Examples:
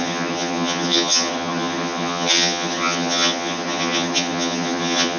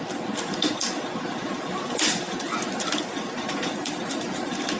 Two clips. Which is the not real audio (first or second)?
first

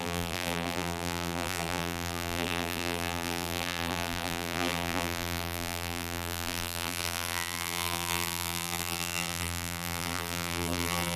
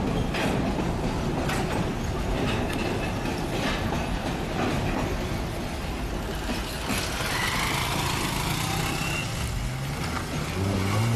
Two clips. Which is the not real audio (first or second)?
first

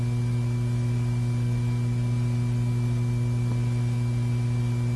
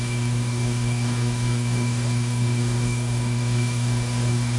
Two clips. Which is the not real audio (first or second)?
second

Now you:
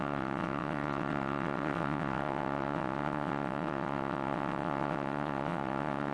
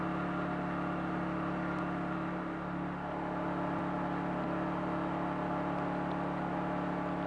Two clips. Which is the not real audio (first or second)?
first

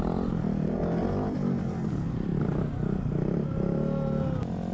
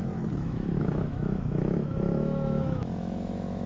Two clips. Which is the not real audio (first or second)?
second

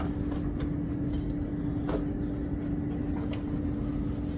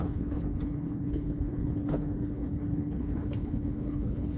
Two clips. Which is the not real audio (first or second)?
second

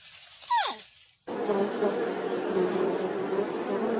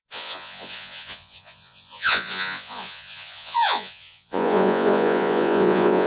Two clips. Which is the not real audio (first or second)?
second